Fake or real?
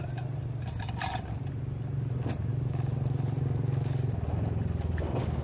real